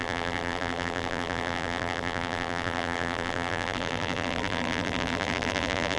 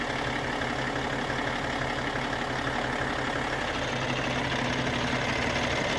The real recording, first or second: second